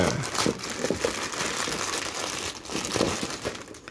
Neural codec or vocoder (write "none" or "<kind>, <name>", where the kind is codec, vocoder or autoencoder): none